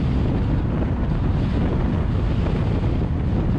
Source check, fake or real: real